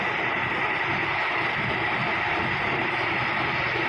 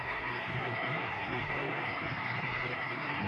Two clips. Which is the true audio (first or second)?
first